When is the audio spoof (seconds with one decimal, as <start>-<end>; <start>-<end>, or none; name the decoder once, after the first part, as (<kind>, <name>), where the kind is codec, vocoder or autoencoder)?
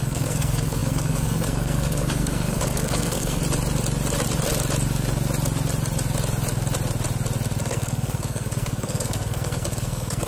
0.0-3.4 (codec, SNAC); 7.6-10.3